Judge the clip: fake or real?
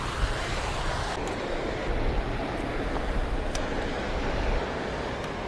real